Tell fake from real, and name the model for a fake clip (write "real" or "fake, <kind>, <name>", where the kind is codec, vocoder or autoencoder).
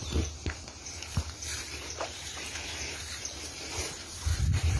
fake, vocoder, BigVGAN v2